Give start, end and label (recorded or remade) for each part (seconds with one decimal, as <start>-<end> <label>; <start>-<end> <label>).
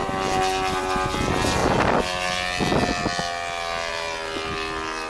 0.0-5.1 recorded